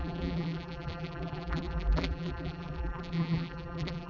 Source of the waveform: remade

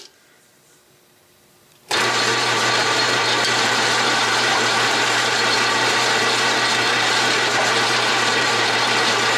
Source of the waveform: remade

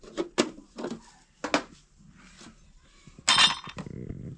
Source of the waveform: recorded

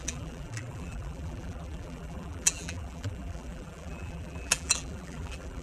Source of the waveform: remade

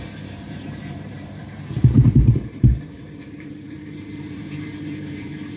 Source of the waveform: remade